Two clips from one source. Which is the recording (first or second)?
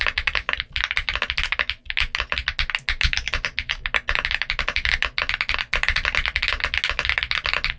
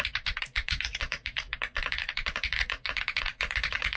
first